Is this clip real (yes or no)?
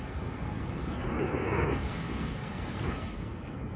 no